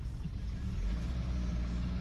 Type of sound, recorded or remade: recorded